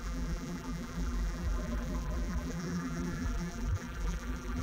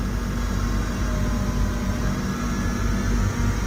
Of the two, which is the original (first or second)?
second